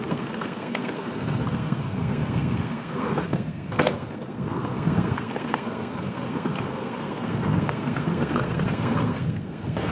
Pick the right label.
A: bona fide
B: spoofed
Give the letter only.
B